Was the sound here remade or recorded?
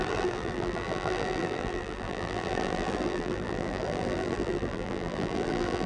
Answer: remade